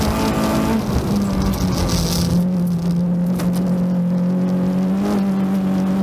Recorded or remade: recorded